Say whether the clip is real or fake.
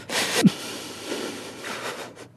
real